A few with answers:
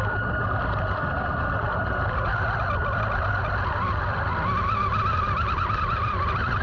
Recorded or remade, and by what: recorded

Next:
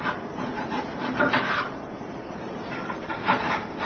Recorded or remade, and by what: remade, vocoder, BigVGAN v2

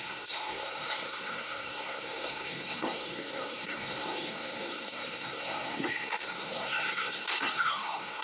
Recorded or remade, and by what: remade, codec, SNAC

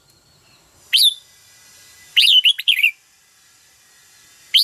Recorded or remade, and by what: recorded